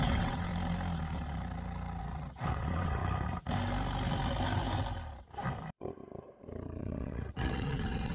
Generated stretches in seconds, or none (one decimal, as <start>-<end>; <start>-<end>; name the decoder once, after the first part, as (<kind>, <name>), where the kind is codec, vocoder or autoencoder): 0.0-0.5 (vocoder, WaveNeXt); 2.0-3.0; 6.8-8.1